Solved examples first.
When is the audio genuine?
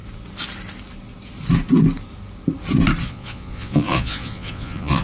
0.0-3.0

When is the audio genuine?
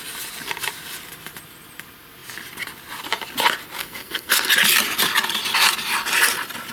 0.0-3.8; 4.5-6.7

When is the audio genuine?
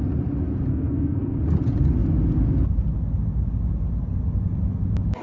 0.0-0.7; 1.4-5.2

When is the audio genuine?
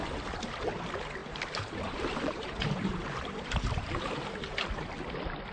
0.0-1.2; 3.9-5.5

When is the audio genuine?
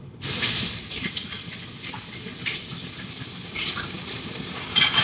0.0-5.0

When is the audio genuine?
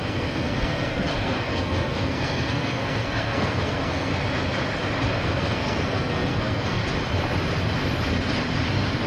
4.1-5.2; 6.8-9.1